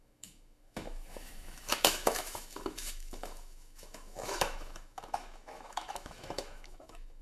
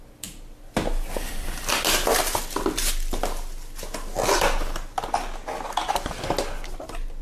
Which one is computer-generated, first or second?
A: first